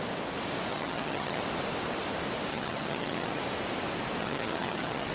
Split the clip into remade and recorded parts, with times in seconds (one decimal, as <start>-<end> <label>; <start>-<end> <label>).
0.0-0.7 recorded; 0.7-1.4 remade; 1.4-2.5 recorded; 2.5-3.4 remade; 3.4-4.2 recorded; 4.2-5.1 remade